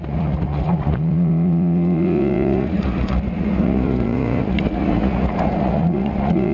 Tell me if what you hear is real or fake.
fake